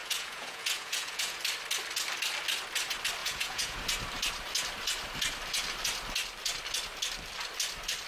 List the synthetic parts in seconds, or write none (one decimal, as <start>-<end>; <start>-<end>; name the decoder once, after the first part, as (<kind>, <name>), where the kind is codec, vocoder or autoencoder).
0.0-1.4 (vocoder, Vocos); 3.2-3.8